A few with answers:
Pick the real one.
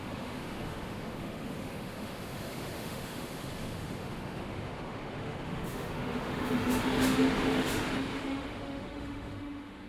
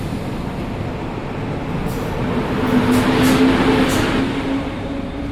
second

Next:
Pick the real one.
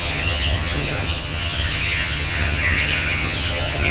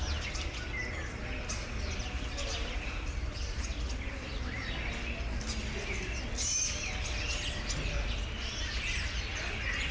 second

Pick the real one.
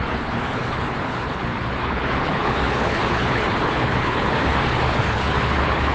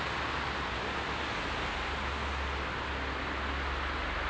second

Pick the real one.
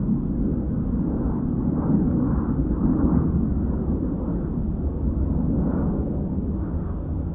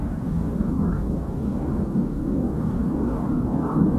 first